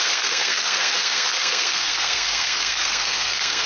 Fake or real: fake